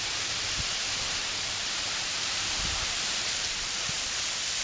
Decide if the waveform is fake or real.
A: fake